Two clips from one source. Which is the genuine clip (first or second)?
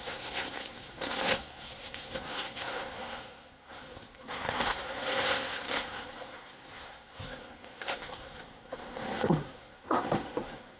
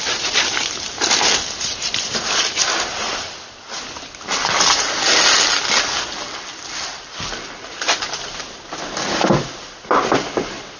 second